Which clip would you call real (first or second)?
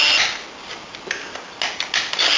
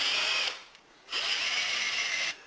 first